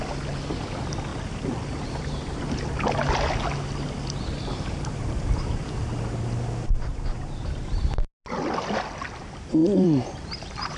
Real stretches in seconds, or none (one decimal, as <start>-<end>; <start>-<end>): 0.0-1.1; 2.4-4.5; 5.6-6.9; 7.7-9.6